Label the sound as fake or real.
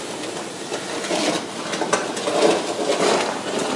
real